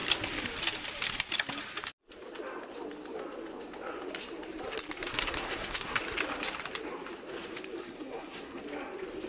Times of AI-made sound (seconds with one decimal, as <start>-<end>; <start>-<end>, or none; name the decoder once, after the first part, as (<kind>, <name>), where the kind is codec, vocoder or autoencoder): 5.1-6.0 (codec, SNAC); 7.8-8.6